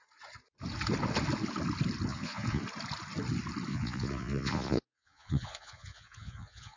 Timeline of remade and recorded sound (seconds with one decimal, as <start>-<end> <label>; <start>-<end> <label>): 0.0-2.1 recorded; 2.1-2.6 remade; 2.6-3.7 recorded; 3.7-6.8 remade